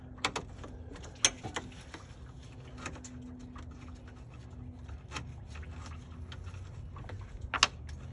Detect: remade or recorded recorded